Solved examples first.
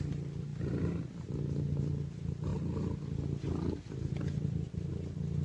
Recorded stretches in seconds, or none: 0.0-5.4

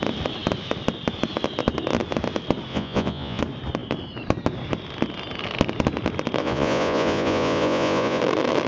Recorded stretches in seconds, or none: 0.0-2.7; 3.4-6.4; 8.2-8.7